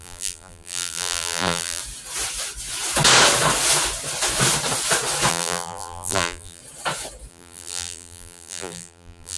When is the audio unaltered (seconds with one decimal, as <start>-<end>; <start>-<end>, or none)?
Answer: 1.8-5.3; 6.6-7.3